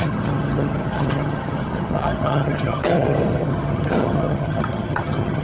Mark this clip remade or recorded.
remade